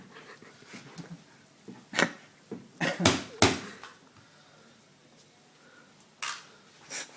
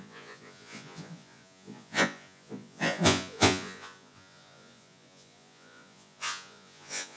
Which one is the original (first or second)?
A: first